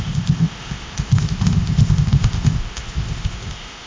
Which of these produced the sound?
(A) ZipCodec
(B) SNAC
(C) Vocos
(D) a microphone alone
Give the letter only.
A